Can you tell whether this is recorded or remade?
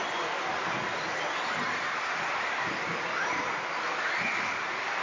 recorded